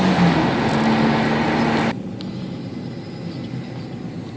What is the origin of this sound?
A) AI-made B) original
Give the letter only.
B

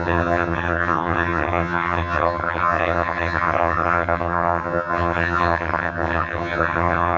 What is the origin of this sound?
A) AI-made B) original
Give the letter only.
A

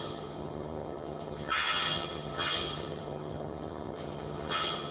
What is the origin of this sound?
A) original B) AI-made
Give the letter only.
B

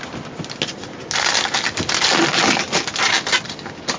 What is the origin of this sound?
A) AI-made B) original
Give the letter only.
B